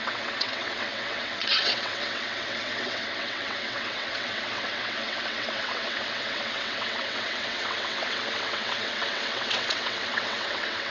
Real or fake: fake